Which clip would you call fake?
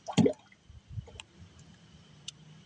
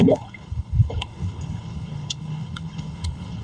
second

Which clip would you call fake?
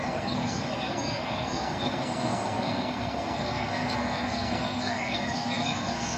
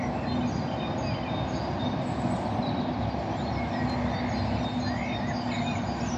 first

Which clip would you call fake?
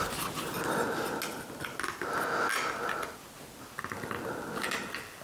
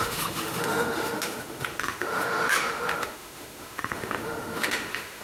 second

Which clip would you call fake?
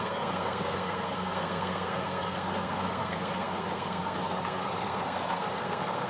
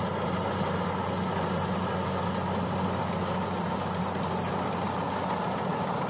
first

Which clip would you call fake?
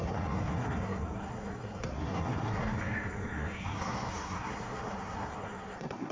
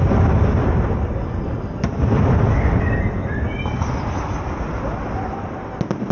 first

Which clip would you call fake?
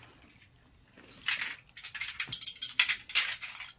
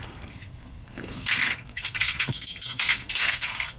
second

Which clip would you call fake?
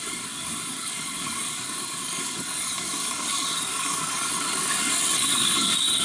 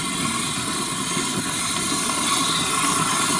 first